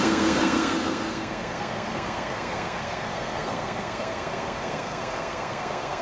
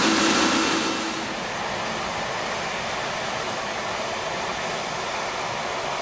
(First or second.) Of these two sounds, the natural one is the second